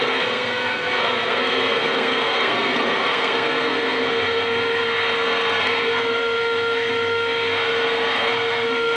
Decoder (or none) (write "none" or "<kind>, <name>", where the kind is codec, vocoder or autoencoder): codec, SNAC